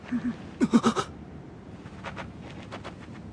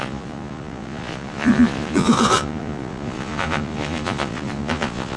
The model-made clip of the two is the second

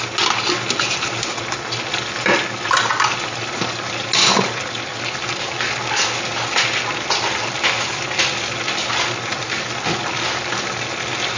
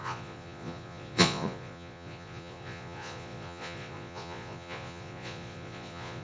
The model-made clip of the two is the second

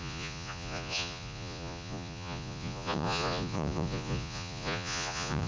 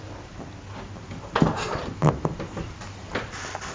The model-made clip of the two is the first